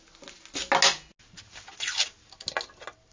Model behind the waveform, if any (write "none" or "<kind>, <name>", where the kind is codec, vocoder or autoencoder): none